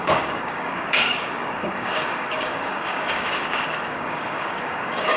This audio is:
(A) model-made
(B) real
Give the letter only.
A